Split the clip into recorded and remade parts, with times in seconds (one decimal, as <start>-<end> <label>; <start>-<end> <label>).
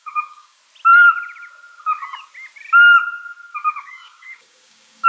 0.0-0.6 remade; 0.6-3.7 recorded; 3.7-5.1 remade